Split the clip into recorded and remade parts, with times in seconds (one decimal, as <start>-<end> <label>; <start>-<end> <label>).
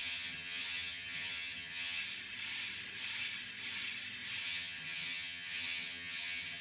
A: 0.0-2.0 remade; 2.0-4.4 recorded; 4.4-6.6 remade